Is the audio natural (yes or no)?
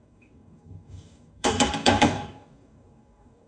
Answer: no